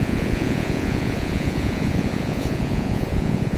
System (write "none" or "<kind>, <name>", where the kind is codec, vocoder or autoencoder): vocoder, Vocos